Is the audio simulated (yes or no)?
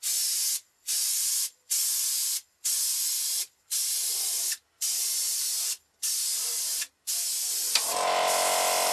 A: no